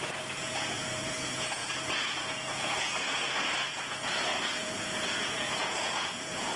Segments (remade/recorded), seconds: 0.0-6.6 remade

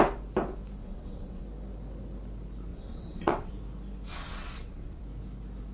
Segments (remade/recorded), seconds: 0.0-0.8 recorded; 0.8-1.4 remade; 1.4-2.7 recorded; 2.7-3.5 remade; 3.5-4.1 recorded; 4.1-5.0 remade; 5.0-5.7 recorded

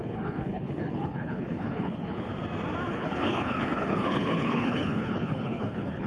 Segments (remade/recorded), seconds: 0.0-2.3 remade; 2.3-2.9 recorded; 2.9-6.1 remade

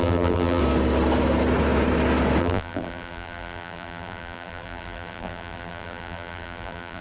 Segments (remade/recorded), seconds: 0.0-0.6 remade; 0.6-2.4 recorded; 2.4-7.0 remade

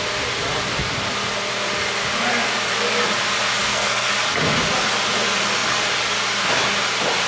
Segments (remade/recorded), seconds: 0.0-3.6 recorded; 3.6-4.1 remade; 4.1-7.3 recorded

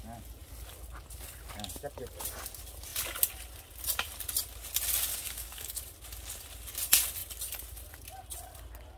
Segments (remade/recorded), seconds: 0.0-5.1 recorded; 5.1-5.8 remade; 5.8-9.0 recorded